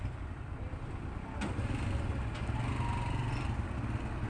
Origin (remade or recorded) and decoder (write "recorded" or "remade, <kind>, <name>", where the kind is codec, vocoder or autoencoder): recorded